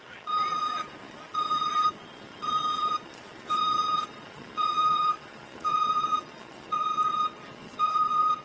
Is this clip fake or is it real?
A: fake